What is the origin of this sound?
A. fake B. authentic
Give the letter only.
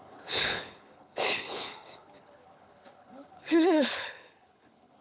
A